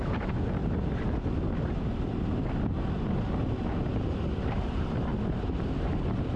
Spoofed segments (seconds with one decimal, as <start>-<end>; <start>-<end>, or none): 0.0-0.6; 4.4-5.1